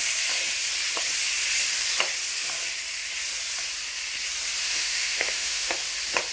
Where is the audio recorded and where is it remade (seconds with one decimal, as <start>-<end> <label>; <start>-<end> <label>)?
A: 0.0-4.6 recorded; 4.6-5.7 remade; 5.7-6.3 recorded